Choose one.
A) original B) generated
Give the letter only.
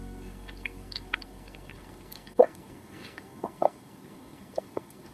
B